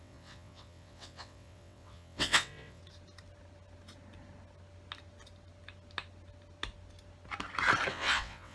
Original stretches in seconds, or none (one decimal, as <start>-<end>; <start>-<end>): 2.8-7.9